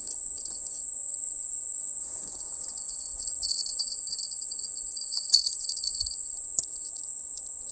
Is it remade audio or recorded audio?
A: remade